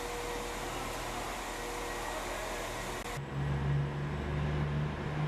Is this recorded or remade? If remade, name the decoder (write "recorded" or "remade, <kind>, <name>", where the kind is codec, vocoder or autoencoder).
recorded